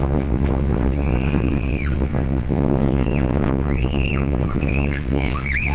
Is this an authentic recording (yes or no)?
no